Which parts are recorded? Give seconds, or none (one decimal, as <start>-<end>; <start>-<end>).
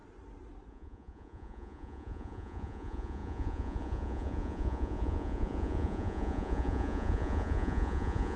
0.0-0.7